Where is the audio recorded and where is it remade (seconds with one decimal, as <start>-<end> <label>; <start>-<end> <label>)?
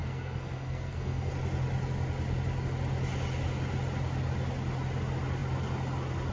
0.0-1.3 remade; 1.3-6.3 recorded